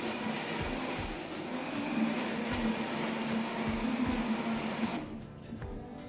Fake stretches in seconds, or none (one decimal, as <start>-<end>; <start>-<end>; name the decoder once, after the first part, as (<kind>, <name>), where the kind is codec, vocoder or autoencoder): none